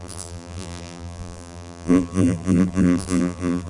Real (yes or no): no